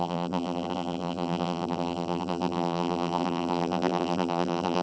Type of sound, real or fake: fake